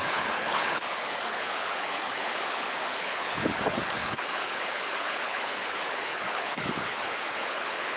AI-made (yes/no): yes